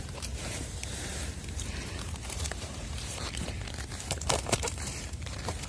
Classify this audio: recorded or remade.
remade